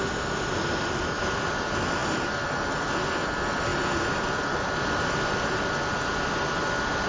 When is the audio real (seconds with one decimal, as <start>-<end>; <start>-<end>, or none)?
0.0-7.1